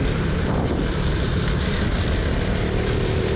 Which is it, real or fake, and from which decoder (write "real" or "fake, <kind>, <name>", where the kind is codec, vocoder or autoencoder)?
fake, vocoder, BigVGAN v2